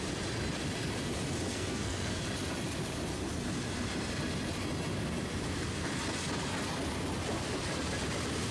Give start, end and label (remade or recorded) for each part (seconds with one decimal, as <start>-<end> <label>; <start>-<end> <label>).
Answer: 0.0-1.5 recorded; 1.5-2.2 remade; 2.2-8.5 recorded